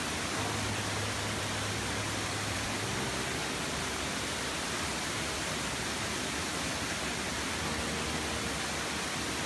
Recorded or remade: recorded